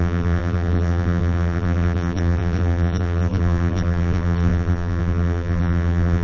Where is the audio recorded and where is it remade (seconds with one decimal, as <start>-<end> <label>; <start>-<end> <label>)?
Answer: 0.0-6.2 remade